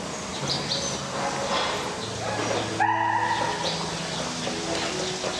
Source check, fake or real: real